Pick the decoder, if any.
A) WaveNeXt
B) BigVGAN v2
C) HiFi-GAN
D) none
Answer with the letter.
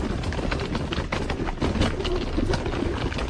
D